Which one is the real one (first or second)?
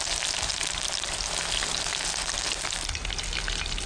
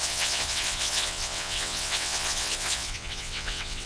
first